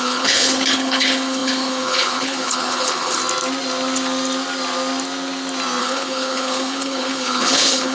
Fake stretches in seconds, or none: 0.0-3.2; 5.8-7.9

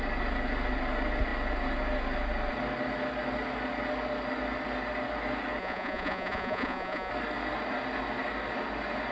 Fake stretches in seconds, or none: 5.6-7.1

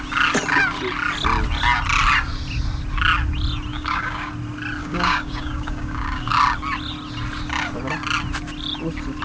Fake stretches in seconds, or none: 3.7-4.3; 4.8-6.3

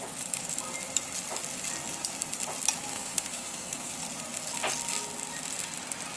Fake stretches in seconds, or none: 2.9-3.9